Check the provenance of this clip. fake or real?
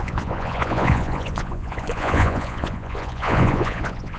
fake